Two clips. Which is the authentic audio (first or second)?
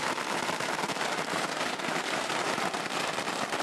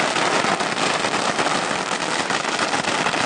second